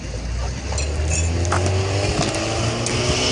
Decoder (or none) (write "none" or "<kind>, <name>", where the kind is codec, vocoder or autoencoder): none